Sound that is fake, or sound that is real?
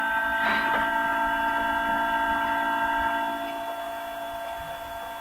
real